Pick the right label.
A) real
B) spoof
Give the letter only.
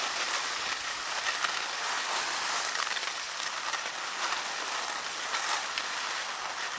A